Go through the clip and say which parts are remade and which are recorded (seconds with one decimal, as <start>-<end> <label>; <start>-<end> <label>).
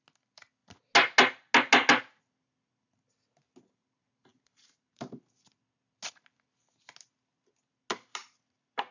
0.0-4.3 recorded; 4.3-5.2 remade; 5.2-8.2 recorded; 8.2-8.9 remade